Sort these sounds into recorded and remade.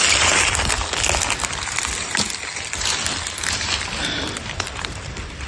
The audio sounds recorded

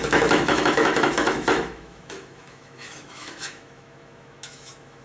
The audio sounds remade